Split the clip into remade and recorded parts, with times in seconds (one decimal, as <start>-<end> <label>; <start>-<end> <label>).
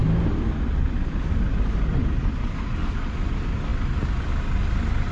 0.0-5.1 recorded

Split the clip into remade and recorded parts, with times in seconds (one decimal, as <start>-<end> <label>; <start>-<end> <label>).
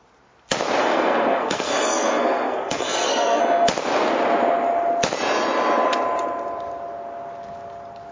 0.0-0.8 recorded; 0.8-3.4 remade; 3.4-8.1 recorded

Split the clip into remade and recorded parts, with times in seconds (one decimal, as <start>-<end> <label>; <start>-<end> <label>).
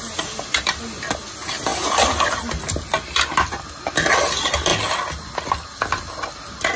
0.0-6.8 recorded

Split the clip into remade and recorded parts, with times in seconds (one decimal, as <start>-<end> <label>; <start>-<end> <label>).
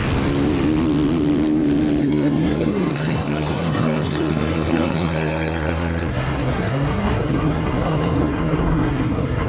0.0-2.0 recorded; 2.0-9.5 remade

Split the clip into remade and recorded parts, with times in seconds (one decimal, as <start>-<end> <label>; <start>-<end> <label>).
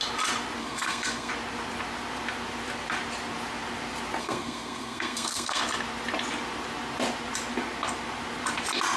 0.0-0.6 recorded; 0.6-1.3 remade; 1.3-4.2 recorded; 4.2-5.6 remade; 5.6-9.0 recorded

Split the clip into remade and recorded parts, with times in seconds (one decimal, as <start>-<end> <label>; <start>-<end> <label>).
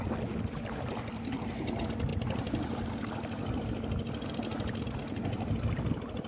0.0-6.3 recorded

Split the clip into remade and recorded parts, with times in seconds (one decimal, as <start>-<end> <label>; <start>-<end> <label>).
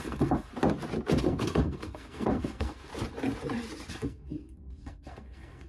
0.0-0.5 remade; 0.5-1.2 recorded; 1.2-2.9 remade; 2.9-3.9 recorded; 3.9-5.7 remade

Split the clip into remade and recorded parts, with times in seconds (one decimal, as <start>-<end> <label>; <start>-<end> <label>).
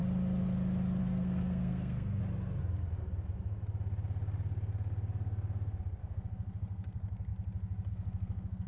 0.0-1.0 recorded; 1.0-2.2 remade; 2.2-6.0 recorded; 6.0-7.3 remade; 7.3-7.9 recorded; 7.9-8.7 remade